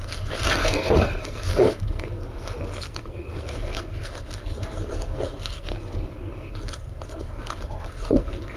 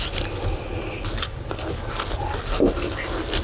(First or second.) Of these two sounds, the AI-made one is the first